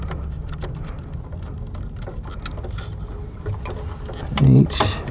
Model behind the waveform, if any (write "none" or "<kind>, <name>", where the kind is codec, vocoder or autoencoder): none